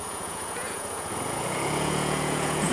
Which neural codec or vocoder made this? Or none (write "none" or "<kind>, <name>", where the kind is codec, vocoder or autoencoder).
vocoder, Vocos